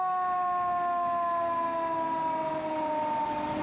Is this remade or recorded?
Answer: recorded